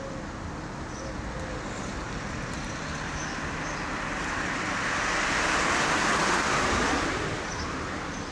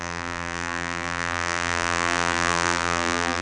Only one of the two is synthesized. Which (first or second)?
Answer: second